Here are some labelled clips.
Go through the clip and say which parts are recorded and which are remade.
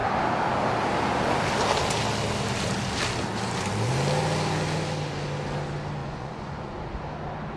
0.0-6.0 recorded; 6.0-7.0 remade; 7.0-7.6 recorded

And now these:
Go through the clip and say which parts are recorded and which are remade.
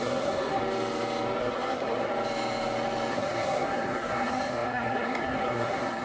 0.0-0.6 remade; 0.6-1.4 recorded; 1.4-2.1 remade; 2.1-3.1 recorded; 3.1-6.0 remade